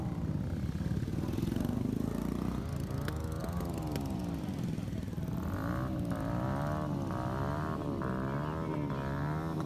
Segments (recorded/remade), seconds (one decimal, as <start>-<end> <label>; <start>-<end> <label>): 0.0-9.7 recorded